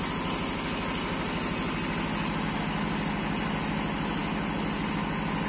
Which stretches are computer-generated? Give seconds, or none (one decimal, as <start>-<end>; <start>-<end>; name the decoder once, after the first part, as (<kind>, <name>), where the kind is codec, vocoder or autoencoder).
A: none